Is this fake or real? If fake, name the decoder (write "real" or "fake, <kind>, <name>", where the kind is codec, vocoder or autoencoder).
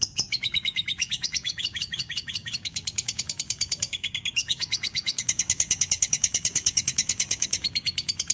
fake, codec, DAC